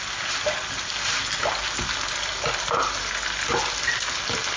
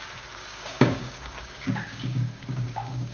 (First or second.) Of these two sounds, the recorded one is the first